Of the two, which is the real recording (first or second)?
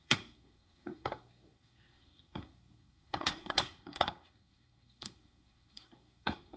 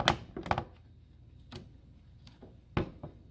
second